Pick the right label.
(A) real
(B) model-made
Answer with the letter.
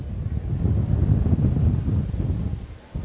A